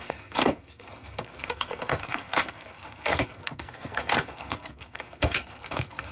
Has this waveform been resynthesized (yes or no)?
yes